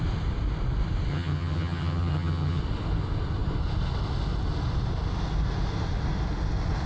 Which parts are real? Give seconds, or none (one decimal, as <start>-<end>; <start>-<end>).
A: 0.0-1.1; 2.6-6.9